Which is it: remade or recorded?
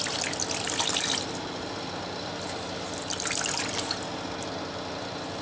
recorded